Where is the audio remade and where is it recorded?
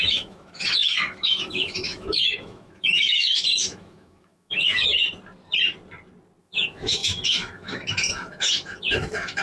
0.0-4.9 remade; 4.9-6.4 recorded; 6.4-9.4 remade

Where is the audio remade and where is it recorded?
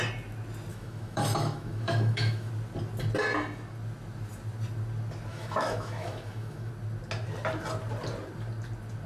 0.0-0.7 recorded; 0.7-2.5 remade; 2.5-5.3 recorded; 5.3-6.7 remade; 6.7-9.1 recorded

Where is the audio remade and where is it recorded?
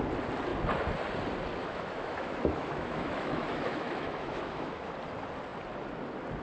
0.0-1.6 recorded; 1.6-4.9 remade; 4.9-6.4 recorded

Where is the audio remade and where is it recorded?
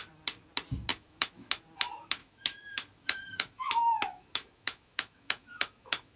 0.0-0.9 recorded; 0.9-1.5 remade; 1.5-2.2 recorded; 2.2-6.2 remade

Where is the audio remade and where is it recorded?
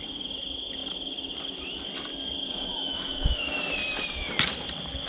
0.0-2.7 recorded; 2.7-3.7 remade; 3.7-5.1 recorded